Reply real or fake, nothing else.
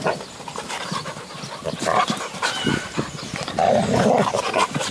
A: real